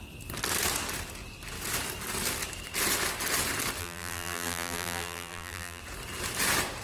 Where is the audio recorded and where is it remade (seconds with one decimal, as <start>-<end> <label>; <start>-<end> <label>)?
0.0-3.8 recorded; 3.8-5.8 remade; 5.8-6.8 recorded